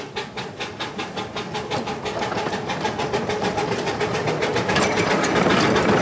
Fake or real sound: real